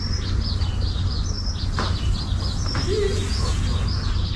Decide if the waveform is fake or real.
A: real